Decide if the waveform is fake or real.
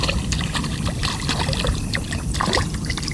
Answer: fake